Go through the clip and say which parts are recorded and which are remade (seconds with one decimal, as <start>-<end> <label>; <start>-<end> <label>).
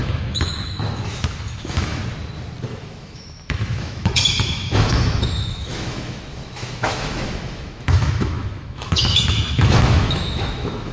0.0-2.0 remade; 2.0-2.6 recorded; 2.6-10.9 remade